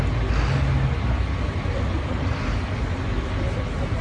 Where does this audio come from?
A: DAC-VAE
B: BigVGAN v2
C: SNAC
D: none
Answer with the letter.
D